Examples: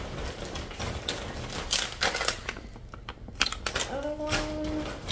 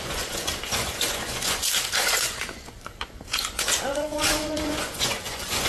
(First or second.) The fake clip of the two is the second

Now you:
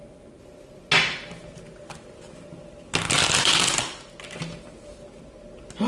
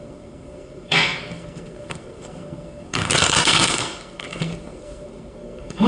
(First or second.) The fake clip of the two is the second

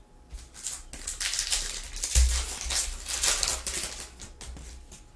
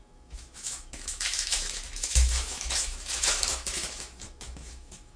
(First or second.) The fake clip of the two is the second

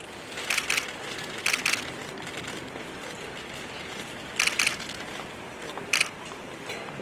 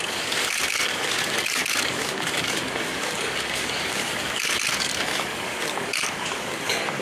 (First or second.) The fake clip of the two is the second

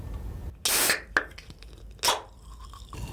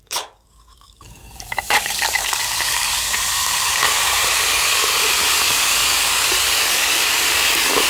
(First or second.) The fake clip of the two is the second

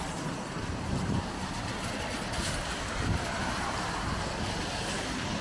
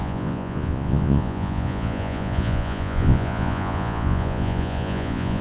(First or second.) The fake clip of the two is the second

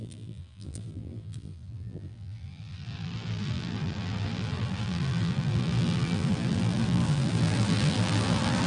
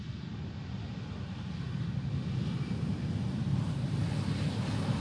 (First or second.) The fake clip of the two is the first